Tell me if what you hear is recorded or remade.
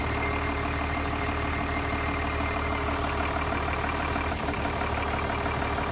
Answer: recorded